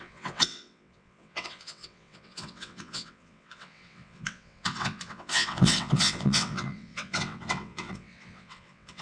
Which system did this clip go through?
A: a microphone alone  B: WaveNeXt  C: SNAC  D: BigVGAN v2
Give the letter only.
B